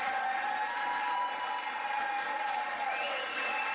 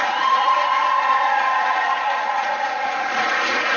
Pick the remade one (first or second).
second